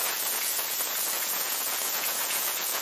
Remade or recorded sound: remade